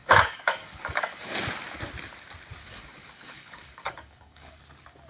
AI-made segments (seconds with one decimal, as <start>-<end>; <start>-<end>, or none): 0.0-1.3; 2.5-4.6